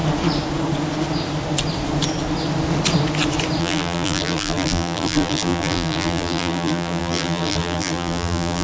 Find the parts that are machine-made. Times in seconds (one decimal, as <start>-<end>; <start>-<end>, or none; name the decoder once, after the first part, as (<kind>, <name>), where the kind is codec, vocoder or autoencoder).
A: 3.6-8.6 (vocoder, BigVGAN v2)